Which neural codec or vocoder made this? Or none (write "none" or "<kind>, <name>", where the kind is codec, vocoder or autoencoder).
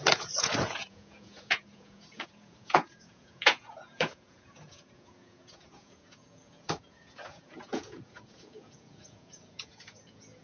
vocoder, Vocos